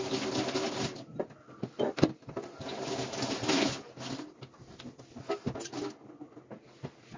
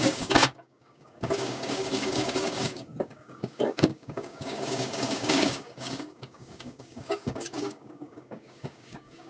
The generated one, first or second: second